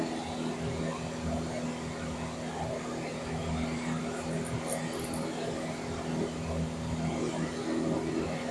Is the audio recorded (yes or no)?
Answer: yes